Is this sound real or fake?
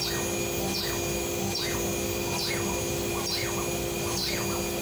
real